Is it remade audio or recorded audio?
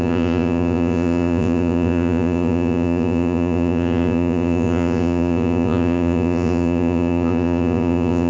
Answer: remade